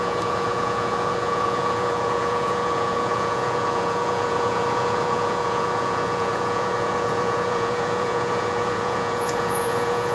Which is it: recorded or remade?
remade